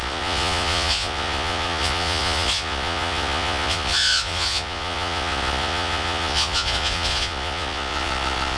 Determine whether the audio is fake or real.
fake